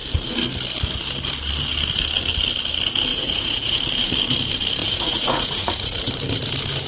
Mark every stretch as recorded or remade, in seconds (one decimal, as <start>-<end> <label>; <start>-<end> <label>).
0.0-3.1 recorded; 3.1-3.8 remade; 3.8-4.8 recorded; 4.8-6.1 remade; 6.1-6.9 recorded